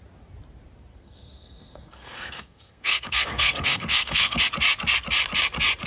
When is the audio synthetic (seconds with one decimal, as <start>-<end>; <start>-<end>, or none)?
0.9-4.4